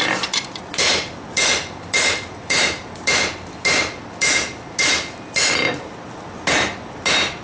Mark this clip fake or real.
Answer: real